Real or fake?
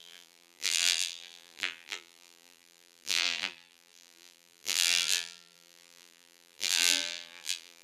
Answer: fake